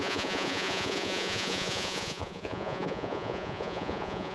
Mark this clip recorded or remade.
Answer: remade